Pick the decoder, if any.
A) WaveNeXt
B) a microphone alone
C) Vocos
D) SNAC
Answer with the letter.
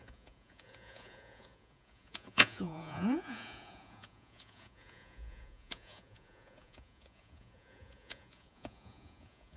C